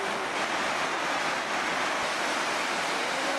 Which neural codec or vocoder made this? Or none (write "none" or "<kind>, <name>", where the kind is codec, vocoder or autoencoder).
none